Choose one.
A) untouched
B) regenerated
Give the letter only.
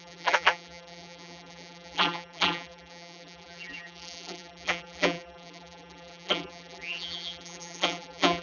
B